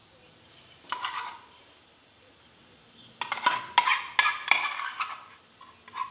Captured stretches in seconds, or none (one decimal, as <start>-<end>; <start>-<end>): 2.3-4.3; 5.5-6.1